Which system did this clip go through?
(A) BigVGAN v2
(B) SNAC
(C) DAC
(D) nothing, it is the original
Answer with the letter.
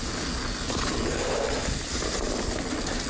D